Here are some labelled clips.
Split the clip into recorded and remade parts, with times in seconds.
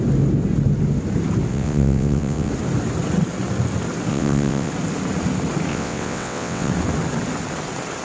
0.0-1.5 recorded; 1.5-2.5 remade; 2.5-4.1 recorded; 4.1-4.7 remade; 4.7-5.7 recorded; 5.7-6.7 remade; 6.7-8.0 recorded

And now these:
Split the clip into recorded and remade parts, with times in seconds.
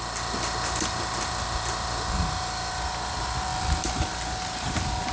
0.0-5.1 recorded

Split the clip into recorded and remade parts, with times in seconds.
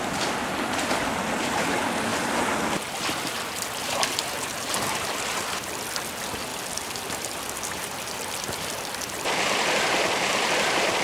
0.0-6.5 recorded; 6.5-11.0 remade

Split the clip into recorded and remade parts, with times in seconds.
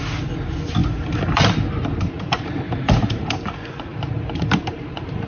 0.0-0.8 recorded; 0.8-3.5 remade; 3.5-3.9 recorded; 3.9-5.3 remade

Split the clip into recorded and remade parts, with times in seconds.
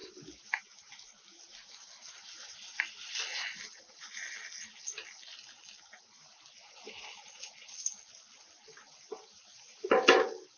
0.0-10.6 recorded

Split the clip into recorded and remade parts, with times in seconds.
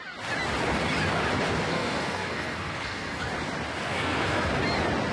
0.0-1.7 recorded; 1.7-3.3 remade; 3.3-3.9 recorded; 3.9-4.5 remade; 4.5-5.1 recorded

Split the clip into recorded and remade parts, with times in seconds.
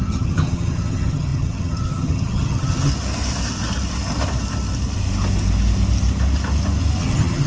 0.0-2.9 remade; 2.9-7.0 recorded; 7.0-7.5 remade